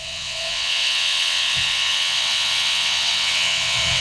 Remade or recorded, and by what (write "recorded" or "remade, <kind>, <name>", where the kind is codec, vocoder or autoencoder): remade, vocoder, WaveNeXt